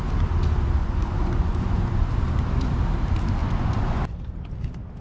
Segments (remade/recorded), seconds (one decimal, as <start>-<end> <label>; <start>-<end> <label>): 0.0-0.8 recorded; 0.8-2.1 remade; 2.1-3.4 recorded; 3.4-4.0 remade; 4.0-5.0 recorded